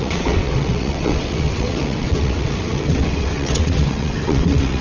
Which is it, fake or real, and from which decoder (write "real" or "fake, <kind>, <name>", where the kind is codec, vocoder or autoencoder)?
fake, vocoder, WaveNeXt